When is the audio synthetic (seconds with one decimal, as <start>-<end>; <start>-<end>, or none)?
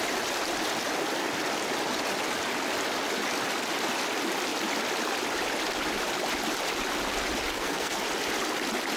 7.5-8.0